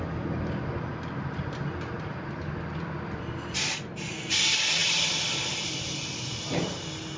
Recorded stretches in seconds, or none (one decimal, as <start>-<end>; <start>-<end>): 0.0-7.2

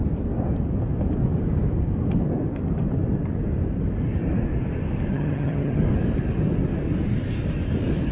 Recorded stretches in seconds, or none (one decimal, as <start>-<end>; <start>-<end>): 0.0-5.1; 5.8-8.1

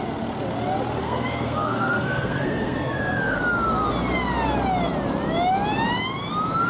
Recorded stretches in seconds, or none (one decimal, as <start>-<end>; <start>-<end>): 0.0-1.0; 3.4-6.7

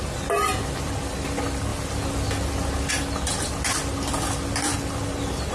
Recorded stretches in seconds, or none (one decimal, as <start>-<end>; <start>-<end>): 0.0-5.5

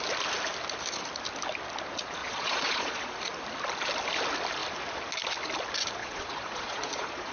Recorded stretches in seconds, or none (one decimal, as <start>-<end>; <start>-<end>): 0.0-2.2; 3.1-6.0

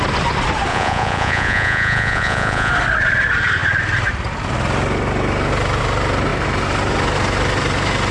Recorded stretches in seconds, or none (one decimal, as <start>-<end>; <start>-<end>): 0.0-0.7; 2.7-8.1